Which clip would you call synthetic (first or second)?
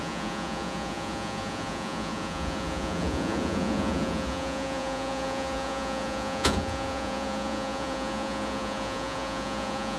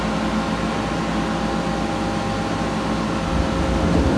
first